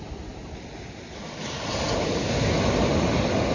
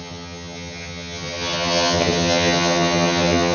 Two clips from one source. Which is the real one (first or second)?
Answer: first